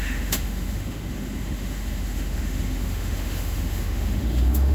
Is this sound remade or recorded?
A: remade